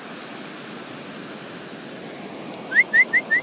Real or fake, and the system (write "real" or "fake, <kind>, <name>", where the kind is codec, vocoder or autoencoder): real